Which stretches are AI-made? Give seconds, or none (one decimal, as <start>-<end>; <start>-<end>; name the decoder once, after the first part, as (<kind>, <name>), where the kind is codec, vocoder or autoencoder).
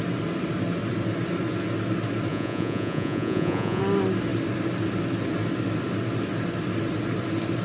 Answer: 2.3-3.8 (vocoder, Vocos)